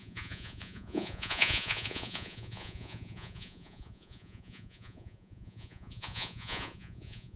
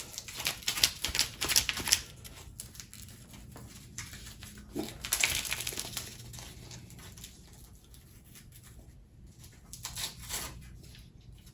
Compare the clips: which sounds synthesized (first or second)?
first